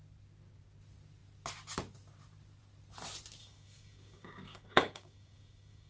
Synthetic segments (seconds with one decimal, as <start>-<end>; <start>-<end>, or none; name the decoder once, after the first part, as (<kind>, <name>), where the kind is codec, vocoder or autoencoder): 3.4-5.9 (codec, DAC)